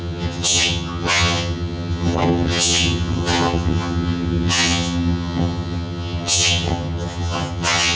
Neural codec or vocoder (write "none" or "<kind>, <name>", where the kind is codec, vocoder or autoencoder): vocoder, HiFi-GAN